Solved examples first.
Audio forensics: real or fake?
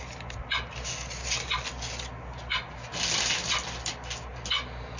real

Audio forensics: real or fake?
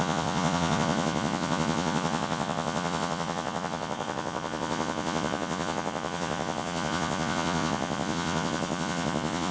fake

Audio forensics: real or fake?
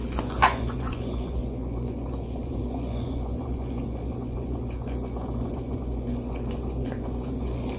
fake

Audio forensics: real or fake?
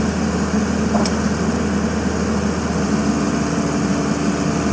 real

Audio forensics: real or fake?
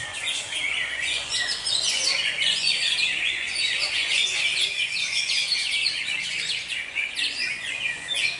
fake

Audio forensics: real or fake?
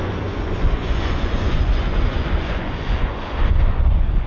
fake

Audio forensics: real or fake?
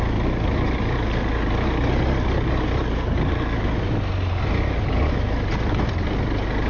real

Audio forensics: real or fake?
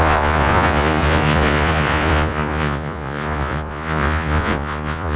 fake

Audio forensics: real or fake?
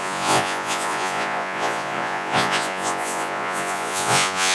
fake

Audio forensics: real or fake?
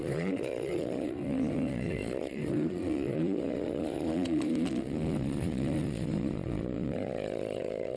fake